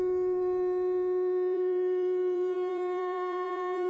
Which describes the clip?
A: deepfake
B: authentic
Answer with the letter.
A